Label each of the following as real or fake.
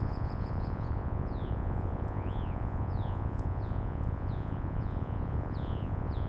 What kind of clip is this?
fake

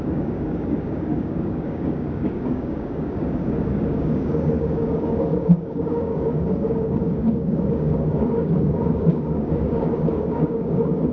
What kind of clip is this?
fake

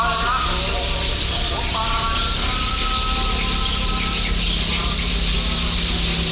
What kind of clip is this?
real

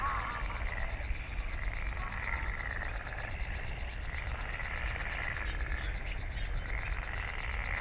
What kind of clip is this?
real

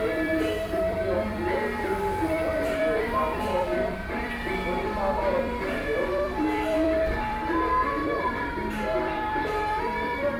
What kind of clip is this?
fake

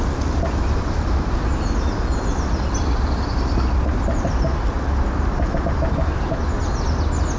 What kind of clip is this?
real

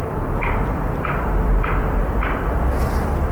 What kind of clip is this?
fake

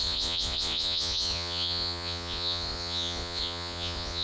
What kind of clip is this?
fake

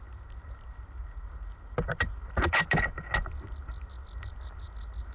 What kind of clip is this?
real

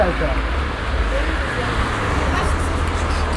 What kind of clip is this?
real